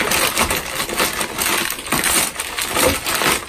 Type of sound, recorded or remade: recorded